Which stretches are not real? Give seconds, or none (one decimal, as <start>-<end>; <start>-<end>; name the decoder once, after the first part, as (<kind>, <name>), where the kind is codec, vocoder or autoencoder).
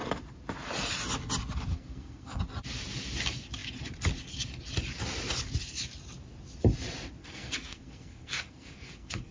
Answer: 1.7-2.4 (codec, SNAC); 7.2-9.3